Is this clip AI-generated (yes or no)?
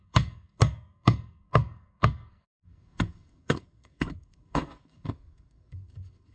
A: yes